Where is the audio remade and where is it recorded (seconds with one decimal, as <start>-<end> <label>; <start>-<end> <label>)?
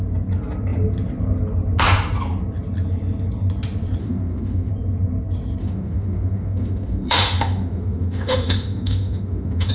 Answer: 0.0-4.0 recorded; 4.0-4.7 remade; 4.7-5.6 recorded; 5.6-9.7 remade